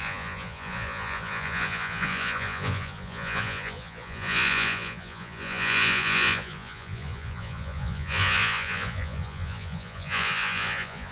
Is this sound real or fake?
fake